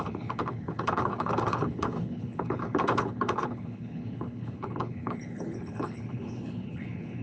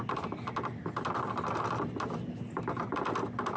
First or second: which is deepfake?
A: first